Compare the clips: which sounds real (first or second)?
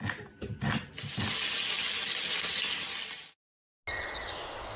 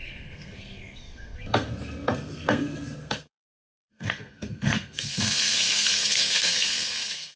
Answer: first